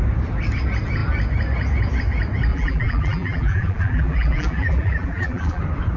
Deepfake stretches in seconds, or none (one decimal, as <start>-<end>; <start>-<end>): 2.5-5.6